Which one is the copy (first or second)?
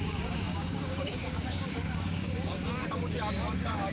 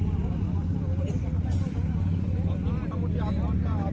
first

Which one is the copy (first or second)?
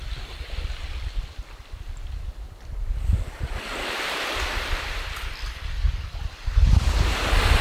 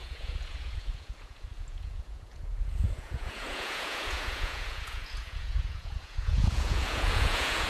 second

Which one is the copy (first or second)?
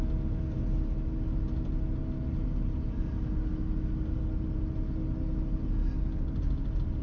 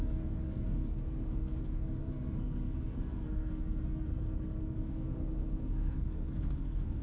second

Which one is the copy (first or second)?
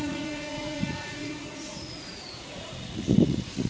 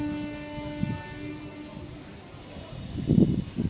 first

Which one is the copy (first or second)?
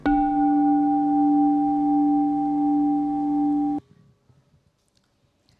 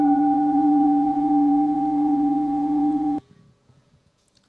second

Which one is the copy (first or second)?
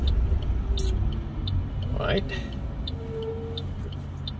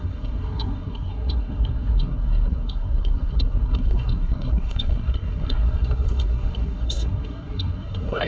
second